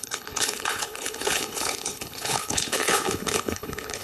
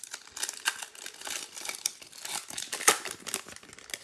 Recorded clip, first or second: second